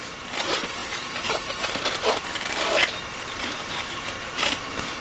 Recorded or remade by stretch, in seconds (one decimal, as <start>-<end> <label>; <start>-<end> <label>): 0.0-5.0 remade